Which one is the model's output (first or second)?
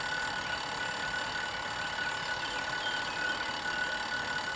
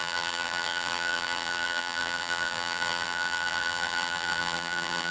second